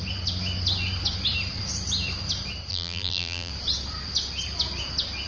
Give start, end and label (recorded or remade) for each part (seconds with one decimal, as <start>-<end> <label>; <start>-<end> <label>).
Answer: 0.0-2.7 recorded; 2.7-3.5 remade; 3.5-5.3 recorded

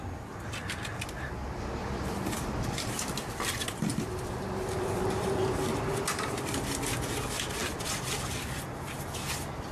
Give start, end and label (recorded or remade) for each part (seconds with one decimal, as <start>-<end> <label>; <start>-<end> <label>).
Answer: 0.0-1.8 recorded; 1.8-3.5 remade; 3.5-3.9 recorded; 3.9-6.5 remade; 6.5-7.6 recorded; 7.6-8.5 remade; 8.5-9.7 recorded